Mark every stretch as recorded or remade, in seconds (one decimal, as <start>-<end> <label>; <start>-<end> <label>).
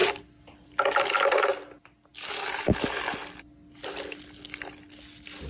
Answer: 0.0-5.5 recorded